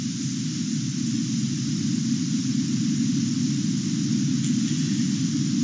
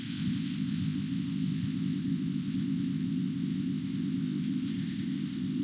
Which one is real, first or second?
first